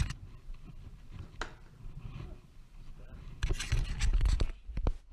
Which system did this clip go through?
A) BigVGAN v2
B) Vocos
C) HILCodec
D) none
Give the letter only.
D